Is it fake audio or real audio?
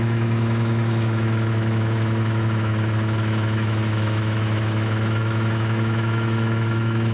fake